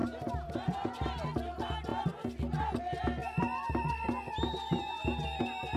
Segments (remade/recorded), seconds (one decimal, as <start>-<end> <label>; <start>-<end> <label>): 0.0-1.2 remade; 1.2-5.8 recorded